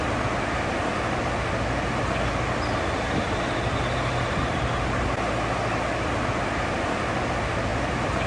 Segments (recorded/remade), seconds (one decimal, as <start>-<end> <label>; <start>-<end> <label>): 0.0-7.7 recorded; 7.7-8.3 remade